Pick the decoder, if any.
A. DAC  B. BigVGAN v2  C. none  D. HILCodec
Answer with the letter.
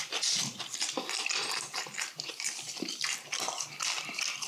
B